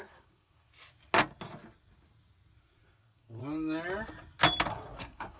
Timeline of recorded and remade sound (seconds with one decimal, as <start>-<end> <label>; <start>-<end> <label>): 0.0-0.7 remade; 0.7-2.6 recorded; 2.6-3.4 remade; 3.4-4.7 recorded; 4.7-5.4 remade